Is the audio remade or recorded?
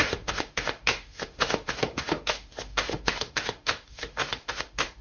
remade